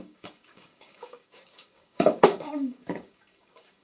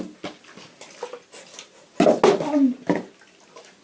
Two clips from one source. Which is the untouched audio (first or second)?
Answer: second